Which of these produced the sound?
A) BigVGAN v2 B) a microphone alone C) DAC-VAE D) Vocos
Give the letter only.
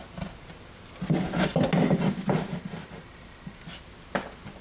B